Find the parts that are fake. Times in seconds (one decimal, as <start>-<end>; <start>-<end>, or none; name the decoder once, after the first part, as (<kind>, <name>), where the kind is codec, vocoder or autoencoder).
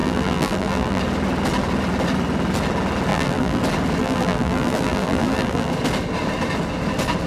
0.0-1.0 (vocoder, BigVGAN v2); 3.1-3.6; 4.0-5.7